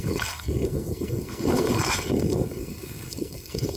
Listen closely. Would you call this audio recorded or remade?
remade